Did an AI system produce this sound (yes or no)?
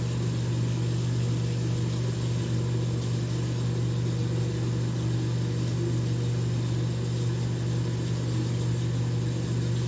no